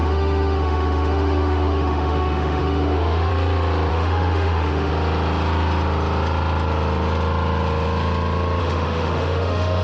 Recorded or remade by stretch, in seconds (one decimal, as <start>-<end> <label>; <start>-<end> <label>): 0.0-3.3 remade; 3.3-3.9 recorded; 3.9-4.9 remade; 4.9-8.6 recorded; 8.6-9.8 remade